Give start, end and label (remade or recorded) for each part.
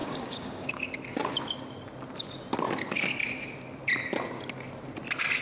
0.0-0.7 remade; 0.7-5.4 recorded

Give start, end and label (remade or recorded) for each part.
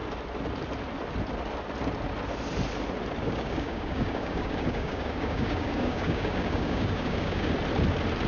0.0-3.2 recorded; 3.2-7.5 remade; 7.5-8.3 recorded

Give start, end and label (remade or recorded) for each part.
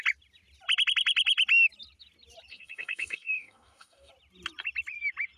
0.0-2.5 recorded; 2.5-4.1 remade; 4.1-5.4 recorded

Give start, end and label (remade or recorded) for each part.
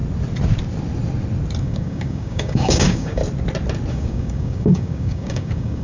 0.0-1.6 recorded; 1.6-3.2 remade; 3.2-3.9 recorded; 3.9-5.8 remade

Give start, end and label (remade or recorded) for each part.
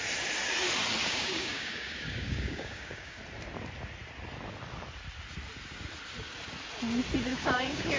0.0-1.0 recorded; 1.0-3.2 remade; 3.2-7.3 recorded; 7.3-8.0 remade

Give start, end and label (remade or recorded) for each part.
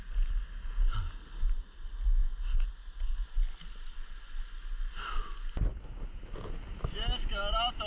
0.0-7.9 recorded